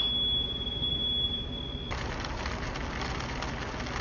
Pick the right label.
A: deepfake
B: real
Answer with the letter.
B